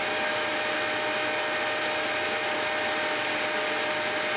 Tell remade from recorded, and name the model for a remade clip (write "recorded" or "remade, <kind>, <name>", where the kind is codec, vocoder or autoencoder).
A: recorded